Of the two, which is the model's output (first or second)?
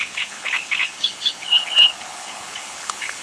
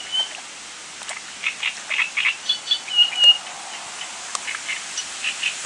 first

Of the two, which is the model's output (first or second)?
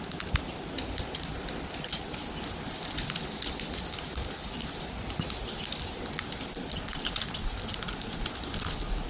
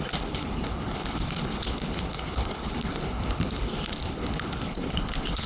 second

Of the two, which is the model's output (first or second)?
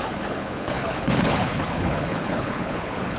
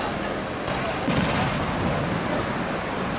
first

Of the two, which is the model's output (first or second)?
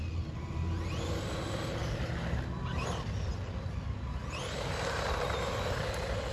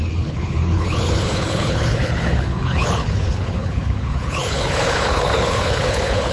second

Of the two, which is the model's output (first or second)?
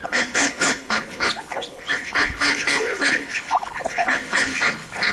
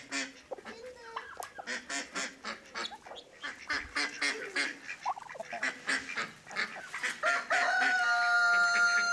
first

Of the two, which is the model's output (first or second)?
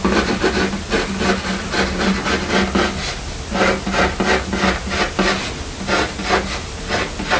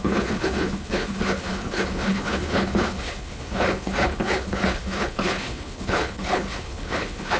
second